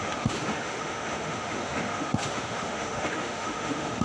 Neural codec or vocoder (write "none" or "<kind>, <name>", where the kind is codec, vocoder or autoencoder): autoencoder, DAC-VAE